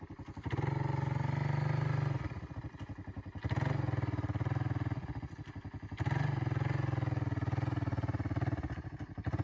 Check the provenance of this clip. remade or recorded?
recorded